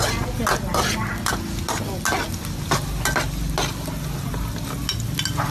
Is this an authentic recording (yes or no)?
yes